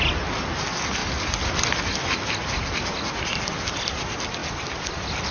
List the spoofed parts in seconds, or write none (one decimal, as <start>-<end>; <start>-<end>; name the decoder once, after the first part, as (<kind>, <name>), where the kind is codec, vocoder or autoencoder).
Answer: 4.4-5.3 (vocoder, BigVGAN v2)